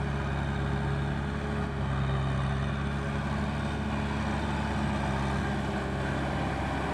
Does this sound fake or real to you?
real